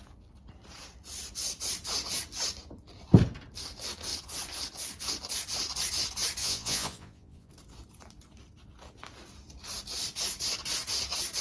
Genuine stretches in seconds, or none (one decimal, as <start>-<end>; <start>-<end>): 0.0-6.4; 7.5-11.4